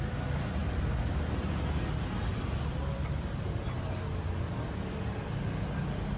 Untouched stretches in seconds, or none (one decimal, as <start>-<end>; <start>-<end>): 0.0-0.6; 1.6-2.3; 3.6-6.2